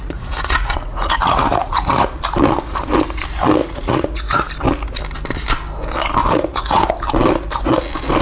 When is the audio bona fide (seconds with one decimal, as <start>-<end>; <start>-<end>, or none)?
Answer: 2.1-3.6; 4.5-6.2; 6.8-8.2